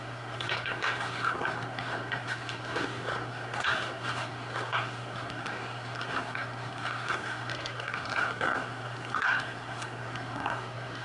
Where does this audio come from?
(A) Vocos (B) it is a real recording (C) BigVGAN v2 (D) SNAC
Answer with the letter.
D